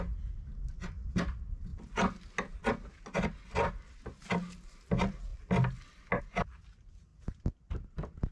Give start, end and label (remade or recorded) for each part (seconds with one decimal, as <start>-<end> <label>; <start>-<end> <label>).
0.0-8.3 recorded